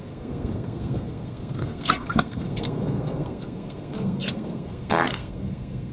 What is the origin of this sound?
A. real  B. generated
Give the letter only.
B